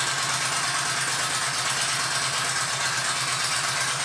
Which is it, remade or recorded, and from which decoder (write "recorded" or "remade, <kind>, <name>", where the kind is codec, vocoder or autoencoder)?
recorded